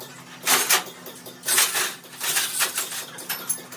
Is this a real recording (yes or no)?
yes